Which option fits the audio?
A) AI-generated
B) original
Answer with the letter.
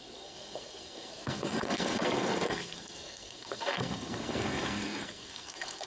A